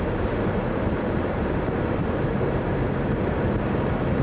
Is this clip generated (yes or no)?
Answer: yes